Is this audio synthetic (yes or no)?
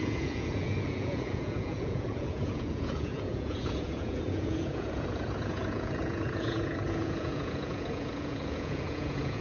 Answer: yes